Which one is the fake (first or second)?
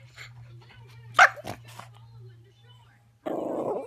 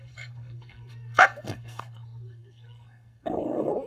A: second